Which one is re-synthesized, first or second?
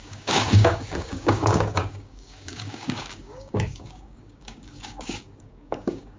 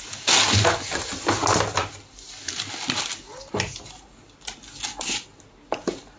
first